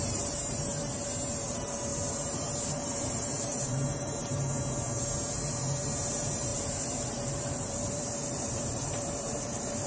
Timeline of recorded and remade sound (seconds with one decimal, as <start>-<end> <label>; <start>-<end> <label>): 0.0-0.4 remade; 0.4-1.3 recorded; 1.3-9.9 remade